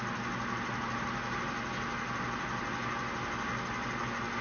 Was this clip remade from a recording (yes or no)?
no